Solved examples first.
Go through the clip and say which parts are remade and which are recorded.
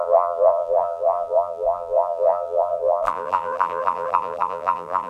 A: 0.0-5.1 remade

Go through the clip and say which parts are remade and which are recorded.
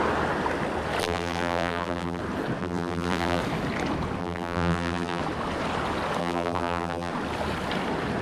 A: 0.0-1.0 recorded; 1.0-2.2 remade; 2.2-2.6 recorded; 2.6-3.4 remade; 3.4-4.2 recorded; 4.2-5.2 remade; 5.2-6.2 recorded; 6.2-7.1 remade; 7.1-8.2 recorded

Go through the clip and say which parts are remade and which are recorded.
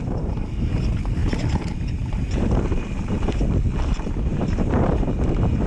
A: 0.0-1.2 recorded; 1.2-3.4 remade; 3.4-4.3 recorded; 4.3-4.9 remade; 4.9-5.7 recorded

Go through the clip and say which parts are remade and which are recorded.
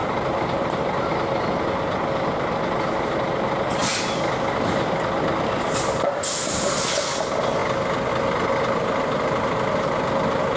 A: 0.0-1.1 remade; 1.1-10.6 recorded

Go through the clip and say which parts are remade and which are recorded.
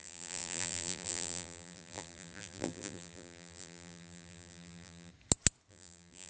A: 0.0-5.1 remade; 5.1-5.7 recorded; 5.7-6.3 remade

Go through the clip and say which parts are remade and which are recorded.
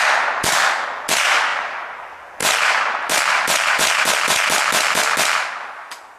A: 0.0-6.2 recorded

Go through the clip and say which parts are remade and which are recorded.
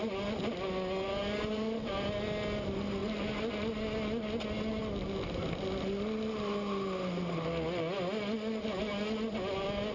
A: 0.0-1.2 recorded; 1.2-1.9 remade; 1.9-9.9 recorded